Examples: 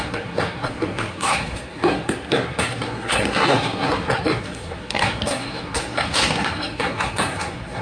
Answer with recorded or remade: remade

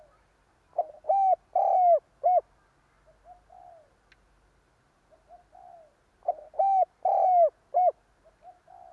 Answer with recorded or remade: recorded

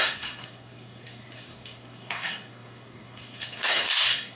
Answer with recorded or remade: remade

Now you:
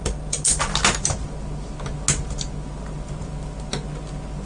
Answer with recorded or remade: recorded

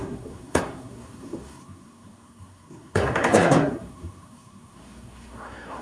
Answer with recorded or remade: remade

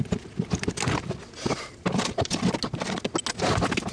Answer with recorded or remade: recorded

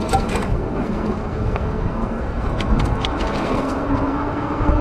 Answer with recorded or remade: remade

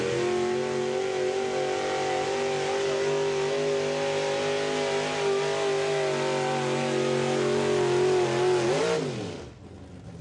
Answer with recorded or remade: recorded